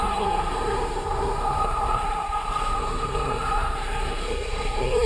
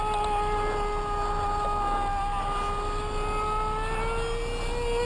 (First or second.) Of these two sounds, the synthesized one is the first